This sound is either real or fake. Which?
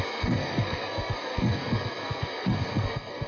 fake